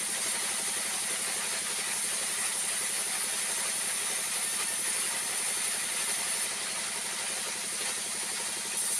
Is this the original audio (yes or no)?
yes